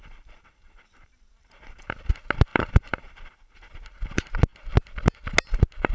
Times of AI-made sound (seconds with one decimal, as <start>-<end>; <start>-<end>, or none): 0.0-2.1; 2.5-3.3